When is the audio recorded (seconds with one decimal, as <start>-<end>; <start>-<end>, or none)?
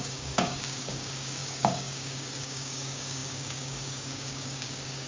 none